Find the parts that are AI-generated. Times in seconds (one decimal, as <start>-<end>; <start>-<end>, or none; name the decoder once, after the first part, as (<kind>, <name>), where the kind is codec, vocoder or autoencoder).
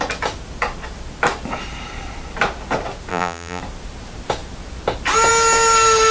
3.1-3.6 (vocoder, BigVGAN v2)